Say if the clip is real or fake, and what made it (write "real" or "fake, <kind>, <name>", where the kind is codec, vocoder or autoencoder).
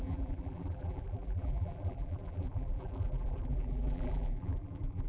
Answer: fake, vocoder, BigVGAN v2